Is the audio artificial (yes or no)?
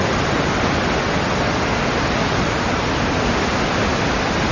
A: no